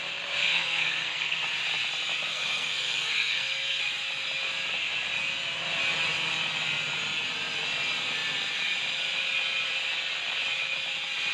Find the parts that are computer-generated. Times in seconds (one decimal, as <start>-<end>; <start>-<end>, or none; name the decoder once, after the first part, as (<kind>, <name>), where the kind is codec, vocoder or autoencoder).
0.4-1.4 (codec, SNAC); 2.3-3.8